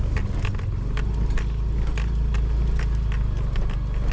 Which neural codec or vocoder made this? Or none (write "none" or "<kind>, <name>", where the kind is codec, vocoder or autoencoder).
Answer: none